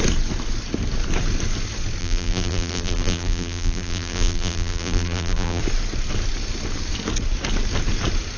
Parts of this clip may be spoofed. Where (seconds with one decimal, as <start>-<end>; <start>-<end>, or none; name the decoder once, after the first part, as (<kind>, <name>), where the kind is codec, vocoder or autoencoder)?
2.0-5.6 (vocoder, BigVGAN v2)

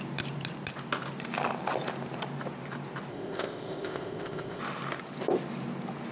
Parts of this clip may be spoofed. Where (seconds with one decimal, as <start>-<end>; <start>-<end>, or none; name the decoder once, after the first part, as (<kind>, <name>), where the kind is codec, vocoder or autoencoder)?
3.1-4.6 (codec, ZipCodec)

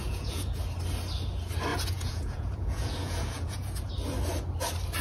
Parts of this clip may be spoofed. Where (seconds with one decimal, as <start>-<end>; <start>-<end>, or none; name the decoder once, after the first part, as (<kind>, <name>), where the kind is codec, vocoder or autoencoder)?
0.0-0.6 (vocoder, Vocos); 1.7-3.9